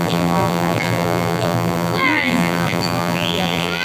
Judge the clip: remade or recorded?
remade